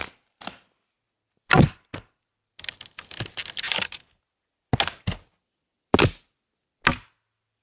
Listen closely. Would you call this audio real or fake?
real